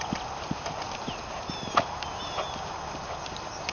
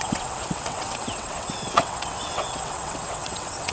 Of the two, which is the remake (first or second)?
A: second